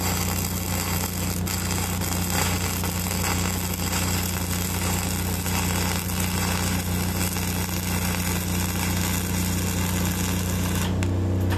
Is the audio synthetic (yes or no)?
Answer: no